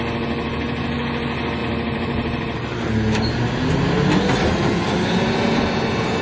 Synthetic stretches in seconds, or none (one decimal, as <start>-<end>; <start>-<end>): 1.6-2.9